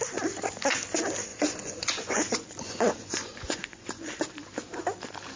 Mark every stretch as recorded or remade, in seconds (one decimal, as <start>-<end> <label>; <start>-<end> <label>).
0.0-1.3 recorded; 1.3-4.2 remade; 4.2-5.4 recorded